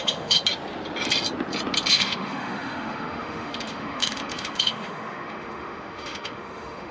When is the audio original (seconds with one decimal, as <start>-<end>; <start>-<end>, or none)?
0.4-1.9